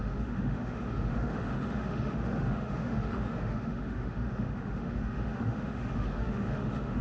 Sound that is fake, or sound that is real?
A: fake